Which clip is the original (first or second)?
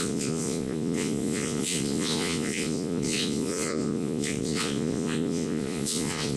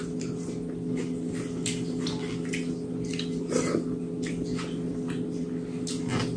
second